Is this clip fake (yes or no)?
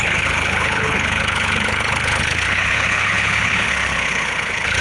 yes